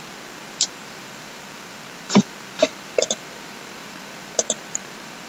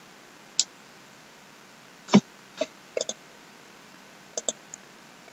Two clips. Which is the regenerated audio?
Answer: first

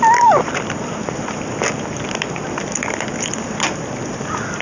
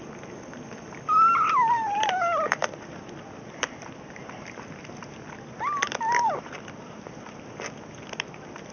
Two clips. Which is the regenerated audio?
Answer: first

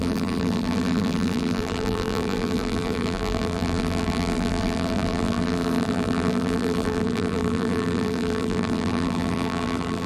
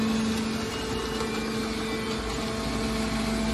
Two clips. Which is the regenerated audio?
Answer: first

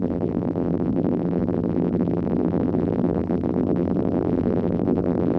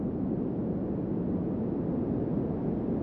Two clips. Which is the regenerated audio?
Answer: first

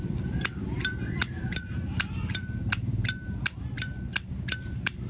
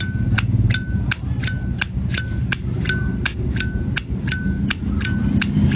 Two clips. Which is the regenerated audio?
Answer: first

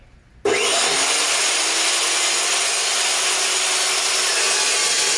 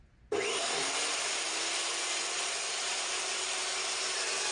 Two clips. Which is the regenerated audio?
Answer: second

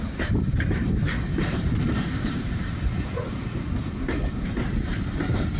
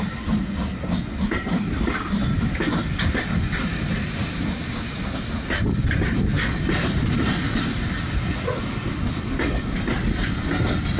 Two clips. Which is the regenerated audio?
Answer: first